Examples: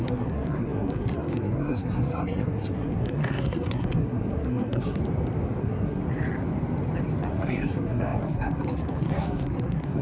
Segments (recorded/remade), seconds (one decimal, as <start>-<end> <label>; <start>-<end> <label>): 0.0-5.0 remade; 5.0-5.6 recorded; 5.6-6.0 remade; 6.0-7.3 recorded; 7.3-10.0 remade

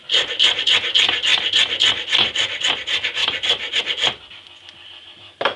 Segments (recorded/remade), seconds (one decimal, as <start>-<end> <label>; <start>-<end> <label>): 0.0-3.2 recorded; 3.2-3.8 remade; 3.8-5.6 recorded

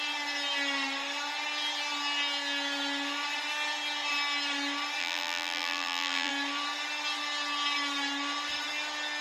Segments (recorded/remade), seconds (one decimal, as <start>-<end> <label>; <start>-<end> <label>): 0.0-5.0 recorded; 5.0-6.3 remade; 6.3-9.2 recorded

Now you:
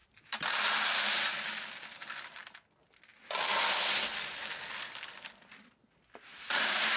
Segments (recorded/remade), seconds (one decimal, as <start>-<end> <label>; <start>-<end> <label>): 0.0-1.3 remade; 1.3-6.3 recorded; 6.3-7.0 remade

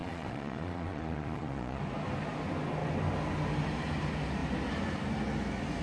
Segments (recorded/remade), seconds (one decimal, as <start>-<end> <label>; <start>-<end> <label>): 0.0-1.8 remade; 1.8-5.8 recorded

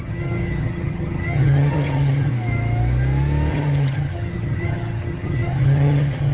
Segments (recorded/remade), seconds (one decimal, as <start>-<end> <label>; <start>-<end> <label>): 0.0-2.3 remade; 2.3-3.5 recorded; 3.5-6.3 remade

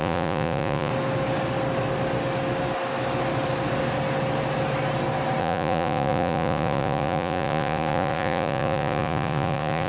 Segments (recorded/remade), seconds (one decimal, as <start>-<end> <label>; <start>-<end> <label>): 0.0-0.9 remade; 0.9-5.4 recorded; 5.4-9.9 remade